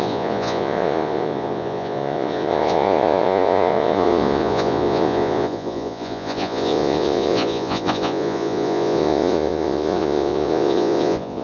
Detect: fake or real fake